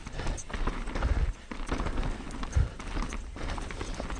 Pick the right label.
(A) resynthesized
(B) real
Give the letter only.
B